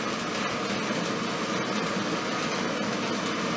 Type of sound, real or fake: real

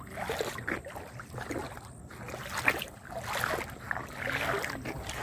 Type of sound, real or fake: real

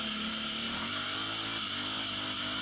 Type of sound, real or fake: real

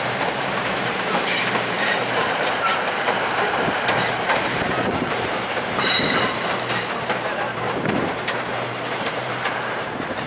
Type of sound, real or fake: fake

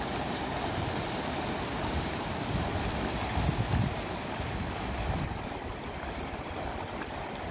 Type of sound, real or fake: real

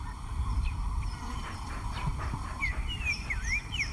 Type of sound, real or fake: fake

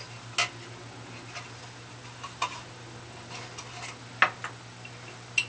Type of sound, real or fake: real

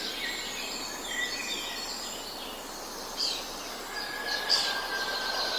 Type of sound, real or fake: real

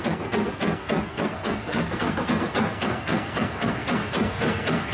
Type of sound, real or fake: fake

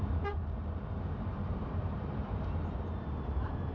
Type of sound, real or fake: fake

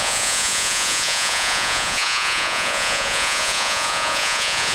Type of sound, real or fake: fake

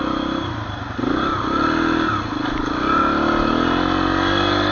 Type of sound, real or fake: real